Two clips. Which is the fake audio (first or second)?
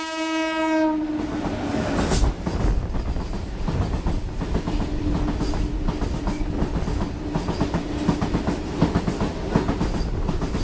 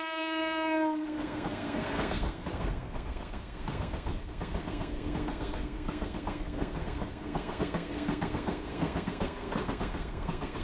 second